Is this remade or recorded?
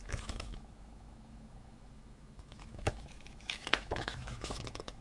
remade